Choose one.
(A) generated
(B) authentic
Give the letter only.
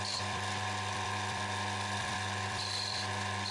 A